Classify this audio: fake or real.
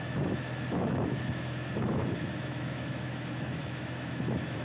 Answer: fake